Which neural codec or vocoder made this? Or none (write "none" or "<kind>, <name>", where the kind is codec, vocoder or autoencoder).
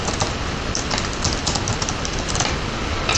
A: none